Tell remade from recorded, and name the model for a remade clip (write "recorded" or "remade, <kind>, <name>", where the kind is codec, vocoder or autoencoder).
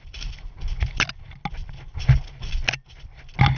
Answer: recorded